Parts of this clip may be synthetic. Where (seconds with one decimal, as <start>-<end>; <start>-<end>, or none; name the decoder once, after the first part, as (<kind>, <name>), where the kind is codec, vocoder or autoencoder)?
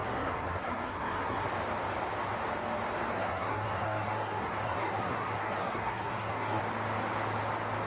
0.0-1.5 (codec, SNAC); 3.1-6.6